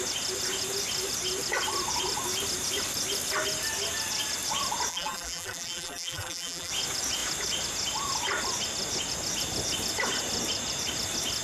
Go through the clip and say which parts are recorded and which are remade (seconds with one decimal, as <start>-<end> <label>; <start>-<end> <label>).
0.0-4.9 recorded; 4.9-6.7 remade; 6.7-11.4 recorded

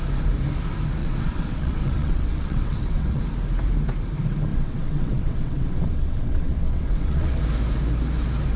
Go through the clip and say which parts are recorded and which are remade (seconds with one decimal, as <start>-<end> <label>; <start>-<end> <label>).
0.0-1.0 recorded; 1.0-3.2 remade; 3.2-4.5 recorded; 4.5-7.4 remade; 7.4-8.6 recorded

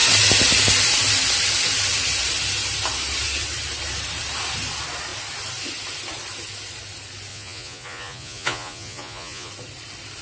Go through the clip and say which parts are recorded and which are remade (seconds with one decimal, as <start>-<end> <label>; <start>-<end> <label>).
0.0-7.3 recorded; 7.3-9.5 remade; 9.5-10.2 recorded

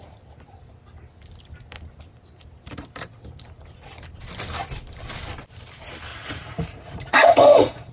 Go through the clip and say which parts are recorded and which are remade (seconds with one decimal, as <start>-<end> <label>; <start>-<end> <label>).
0.0-6.1 recorded; 6.1-7.9 remade